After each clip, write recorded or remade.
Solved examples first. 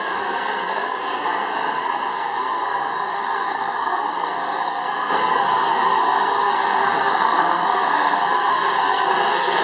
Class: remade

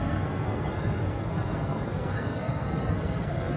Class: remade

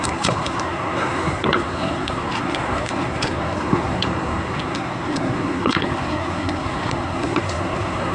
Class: remade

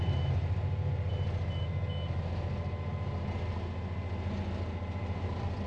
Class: recorded